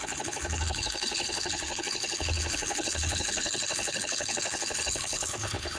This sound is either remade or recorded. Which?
remade